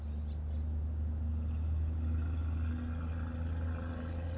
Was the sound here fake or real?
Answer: real